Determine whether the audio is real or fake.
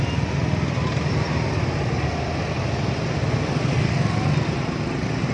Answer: real